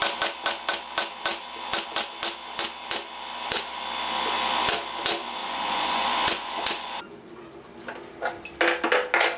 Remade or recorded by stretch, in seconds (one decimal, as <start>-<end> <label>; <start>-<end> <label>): 0.0-5.4 recorded; 5.4-7.4 remade; 7.4-9.4 recorded

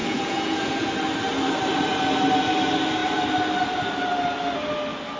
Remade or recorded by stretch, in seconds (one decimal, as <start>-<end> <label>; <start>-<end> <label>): 0.0-0.9 remade; 0.9-5.2 recorded